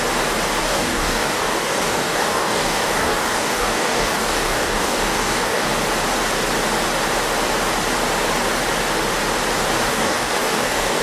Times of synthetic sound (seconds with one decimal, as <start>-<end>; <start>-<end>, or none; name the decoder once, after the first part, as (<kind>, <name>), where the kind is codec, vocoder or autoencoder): 0.6-5.7 (codec, DAC); 9.9-11.0